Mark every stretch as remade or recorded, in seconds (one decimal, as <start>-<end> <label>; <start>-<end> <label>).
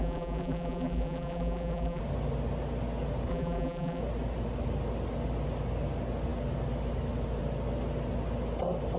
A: 0.0-2.0 remade; 2.0-3.3 recorded; 3.3-4.0 remade; 4.0-9.0 recorded